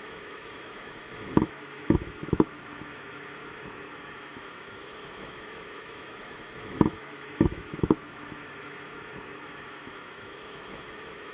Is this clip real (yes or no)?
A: no